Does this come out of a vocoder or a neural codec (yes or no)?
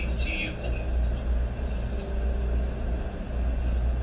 no